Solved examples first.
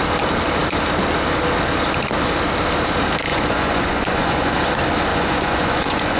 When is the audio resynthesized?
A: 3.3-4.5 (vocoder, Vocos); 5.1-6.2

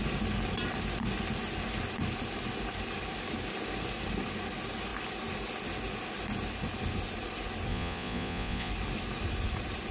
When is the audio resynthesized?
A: 7.7-8.7 (vocoder, Vocos)

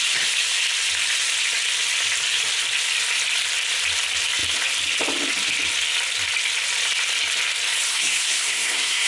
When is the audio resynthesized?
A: 7.9-9.1 (codec, SNAC)

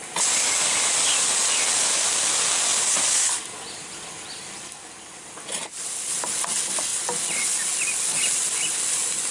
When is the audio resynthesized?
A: none

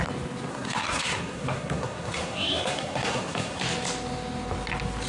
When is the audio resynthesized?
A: 0.5-3.6 (codec, SNAC)

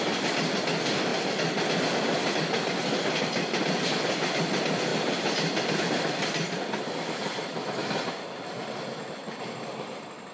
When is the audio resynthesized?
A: none